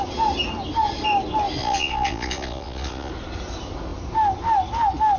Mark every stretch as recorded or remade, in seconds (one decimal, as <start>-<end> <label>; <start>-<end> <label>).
0.0-1.6 recorded; 1.6-3.1 remade; 3.1-5.2 recorded